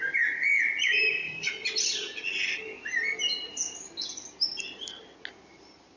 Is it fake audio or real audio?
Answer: real